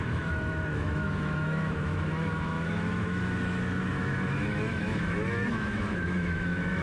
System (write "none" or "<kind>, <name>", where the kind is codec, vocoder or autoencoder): autoencoder, DAC-VAE